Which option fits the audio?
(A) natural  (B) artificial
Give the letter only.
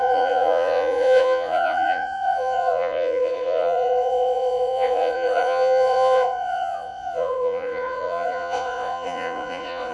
B